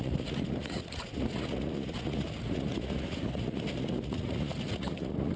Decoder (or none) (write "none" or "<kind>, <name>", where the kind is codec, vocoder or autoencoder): vocoder, Vocos